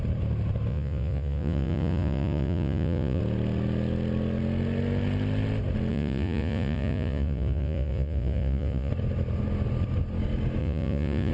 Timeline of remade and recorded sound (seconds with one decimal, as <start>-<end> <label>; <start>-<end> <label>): 0.0-0.7 recorded; 0.7-3.2 remade; 3.2-5.9 recorded; 5.9-8.9 remade; 8.9-10.6 recorded; 10.6-11.3 remade